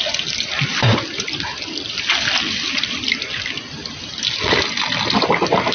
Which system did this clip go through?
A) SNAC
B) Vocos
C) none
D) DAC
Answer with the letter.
C